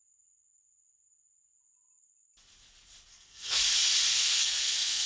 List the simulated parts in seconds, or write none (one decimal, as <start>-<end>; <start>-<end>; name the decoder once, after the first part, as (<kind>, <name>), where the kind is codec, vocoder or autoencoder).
3.1-3.6 (codec, SNAC); 4.1-5.1